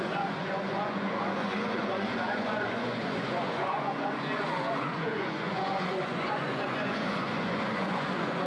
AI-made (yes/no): yes